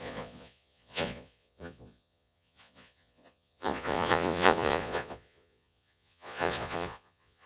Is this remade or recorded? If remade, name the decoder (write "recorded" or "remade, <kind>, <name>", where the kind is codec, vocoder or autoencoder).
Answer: remade, vocoder, Vocos